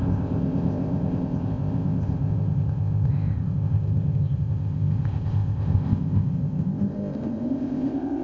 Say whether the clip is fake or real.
fake